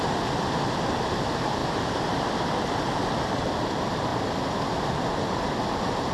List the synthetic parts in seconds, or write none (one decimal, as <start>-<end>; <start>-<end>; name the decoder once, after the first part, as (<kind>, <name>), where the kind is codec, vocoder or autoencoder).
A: none